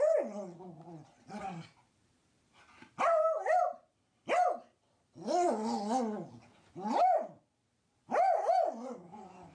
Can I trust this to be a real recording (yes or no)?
yes